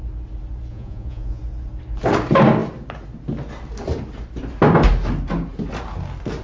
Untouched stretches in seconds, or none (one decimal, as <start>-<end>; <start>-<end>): 0.0-0.7; 1.4-6.4